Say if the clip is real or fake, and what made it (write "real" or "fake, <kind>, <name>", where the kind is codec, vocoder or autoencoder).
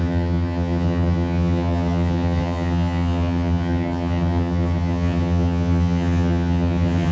fake, vocoder, HiFi-GAN